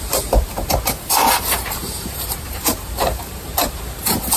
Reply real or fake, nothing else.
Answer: fake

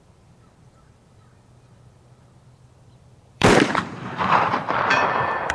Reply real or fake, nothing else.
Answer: fake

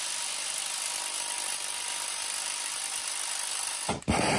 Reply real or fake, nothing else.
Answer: real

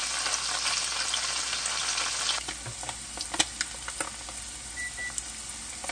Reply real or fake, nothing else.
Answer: real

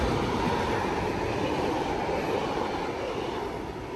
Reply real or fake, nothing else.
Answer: real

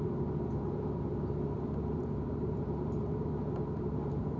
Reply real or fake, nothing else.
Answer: fake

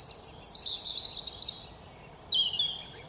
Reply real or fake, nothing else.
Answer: fake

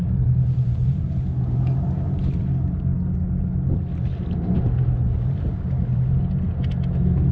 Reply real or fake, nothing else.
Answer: real